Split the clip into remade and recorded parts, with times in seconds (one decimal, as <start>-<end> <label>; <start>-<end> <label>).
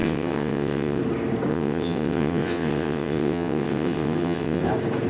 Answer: 0.0-1.0 remade; 1.0-1.5 recorded; 1.5-4.6 remade; 4.6-5.1 recorded